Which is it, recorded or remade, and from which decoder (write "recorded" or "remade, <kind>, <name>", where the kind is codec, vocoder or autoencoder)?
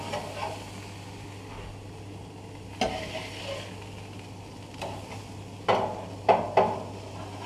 recorded